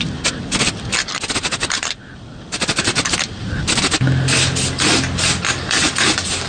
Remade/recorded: recorded